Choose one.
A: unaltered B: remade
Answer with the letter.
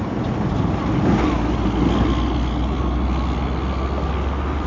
A